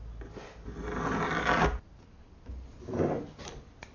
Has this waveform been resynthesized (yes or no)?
no